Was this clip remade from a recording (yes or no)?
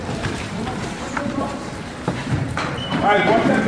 yes